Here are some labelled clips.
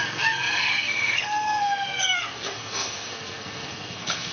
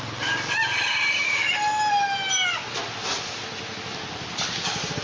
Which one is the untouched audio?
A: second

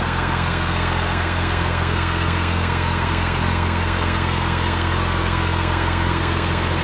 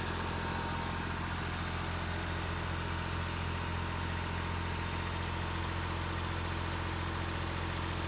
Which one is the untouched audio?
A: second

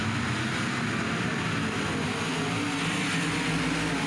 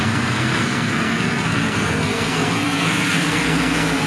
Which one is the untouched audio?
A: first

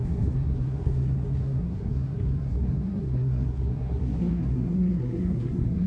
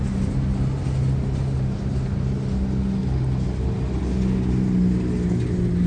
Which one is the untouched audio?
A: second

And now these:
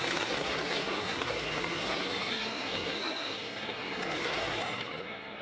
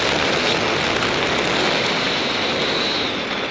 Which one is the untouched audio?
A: second